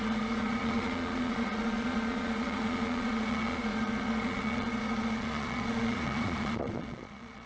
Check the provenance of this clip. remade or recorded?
remade